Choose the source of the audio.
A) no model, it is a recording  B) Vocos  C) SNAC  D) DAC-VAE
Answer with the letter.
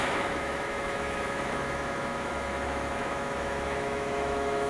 D